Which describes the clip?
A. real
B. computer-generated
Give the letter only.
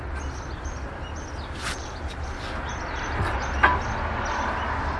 A